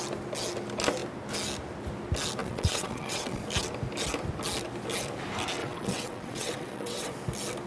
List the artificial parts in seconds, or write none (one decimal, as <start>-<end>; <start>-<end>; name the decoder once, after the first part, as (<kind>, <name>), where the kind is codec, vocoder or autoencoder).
2.4-3.4 (vocoder, WaveNeXt); 5.6-7.1